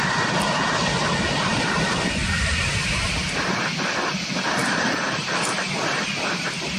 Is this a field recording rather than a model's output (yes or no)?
yes